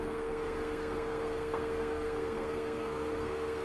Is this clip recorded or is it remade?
remade